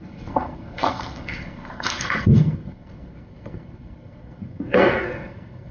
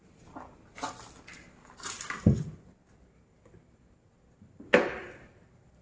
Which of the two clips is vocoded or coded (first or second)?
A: first